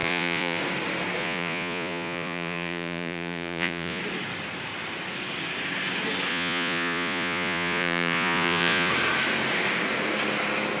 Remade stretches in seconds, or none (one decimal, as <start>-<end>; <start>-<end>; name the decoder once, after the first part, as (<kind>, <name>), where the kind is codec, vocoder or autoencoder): 0.0-0.6 (vocoder, Vocos); 1.2-4.0; 6.3-8.9